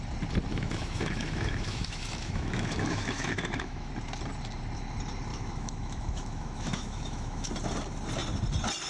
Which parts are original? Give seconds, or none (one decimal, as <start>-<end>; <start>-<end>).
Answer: 0.0-0.5; 3.9-5.3; 7.5-8.9